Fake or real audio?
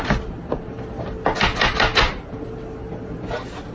real